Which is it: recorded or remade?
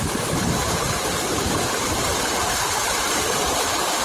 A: remade